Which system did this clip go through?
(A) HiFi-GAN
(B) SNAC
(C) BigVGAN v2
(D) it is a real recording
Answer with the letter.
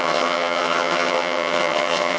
A